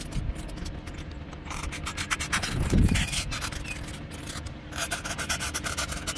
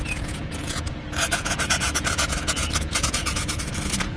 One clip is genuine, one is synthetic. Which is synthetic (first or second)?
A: second